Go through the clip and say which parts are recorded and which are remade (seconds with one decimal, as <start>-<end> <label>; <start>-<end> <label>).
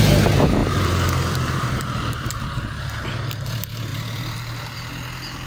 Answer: 0.0-0.6 recorded; 0.6-2.4 remade; 2.4-3.9 recorded; 3.9-4.9 remade; 4.9-5.5 recorded